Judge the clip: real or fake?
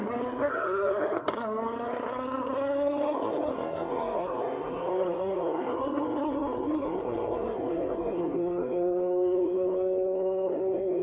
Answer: fake